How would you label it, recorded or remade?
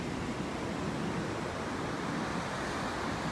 recorded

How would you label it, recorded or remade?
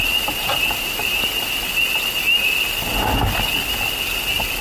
recorded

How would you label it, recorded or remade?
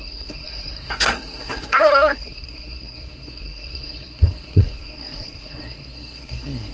remade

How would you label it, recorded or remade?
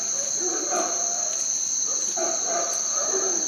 recorded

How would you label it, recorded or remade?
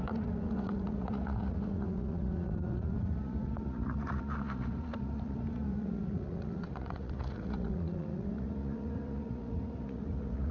remade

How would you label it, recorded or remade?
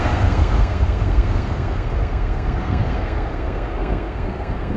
remade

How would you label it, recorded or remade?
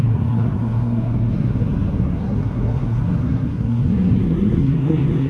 remade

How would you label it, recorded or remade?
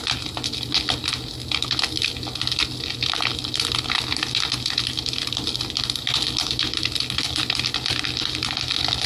recorded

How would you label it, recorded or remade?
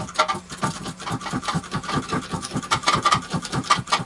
remade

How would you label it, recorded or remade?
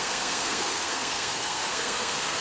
remade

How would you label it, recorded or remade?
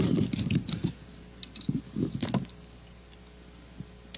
recorded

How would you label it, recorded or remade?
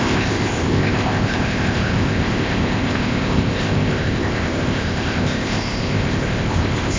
remade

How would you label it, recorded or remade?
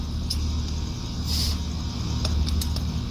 recorded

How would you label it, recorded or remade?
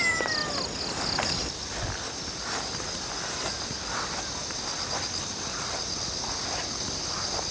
recorded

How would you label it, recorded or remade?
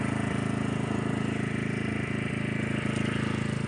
recorded